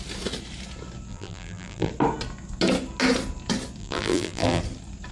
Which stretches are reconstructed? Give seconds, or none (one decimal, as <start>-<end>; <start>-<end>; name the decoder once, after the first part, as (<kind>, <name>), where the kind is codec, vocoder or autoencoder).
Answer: 1.1-1.9 (vocoder, BigVGAN v2); 3.8-4.6